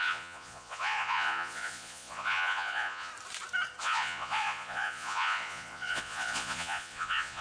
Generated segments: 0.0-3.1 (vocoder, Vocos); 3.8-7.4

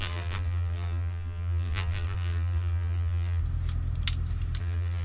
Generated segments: 0.0-3.4 (vocoder, BigVGAN v2); 4.6-5.0

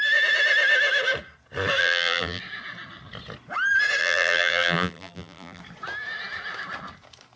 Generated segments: 1.8-2.4 (vocoder, BigVGAN v2); 4.0-5.6

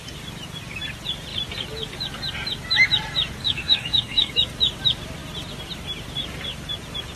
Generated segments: 3.4-4.3 (autoencoder, DAC-VAE)

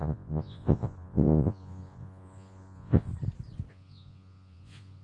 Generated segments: 0.0-3.1 (vocoder, Vocos); 3.7-5.0

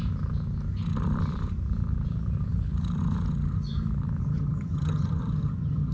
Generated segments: 4.2-5.9 (vocoder, HiFi-GAN)

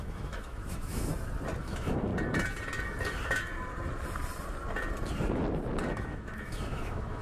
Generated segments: 0.0-1.1 (autoencoder, DAC-VAE); 1.6-2.1; 5.9-7.2

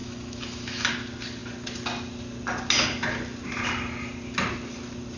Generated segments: 0.0-0.9 (autoencoder, DAC-VAE)